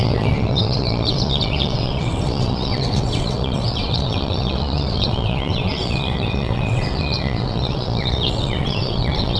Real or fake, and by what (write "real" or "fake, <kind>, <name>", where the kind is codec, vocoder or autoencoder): fake, vocoder, WaveNeXt